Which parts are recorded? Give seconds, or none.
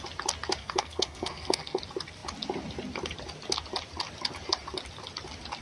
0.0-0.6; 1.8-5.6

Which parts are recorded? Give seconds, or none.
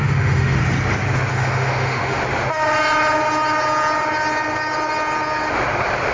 0.6-1.3; 2.2-6.1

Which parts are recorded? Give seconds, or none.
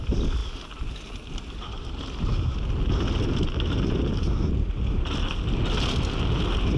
0.0-6.8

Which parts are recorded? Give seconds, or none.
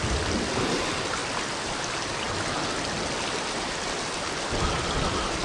0.0-5.4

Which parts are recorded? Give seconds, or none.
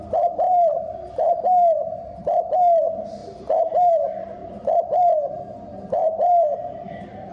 6.0-7.3